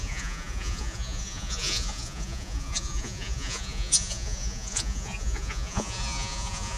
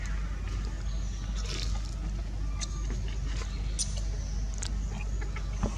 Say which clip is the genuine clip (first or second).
second